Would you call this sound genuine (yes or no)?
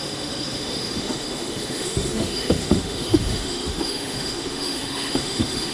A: no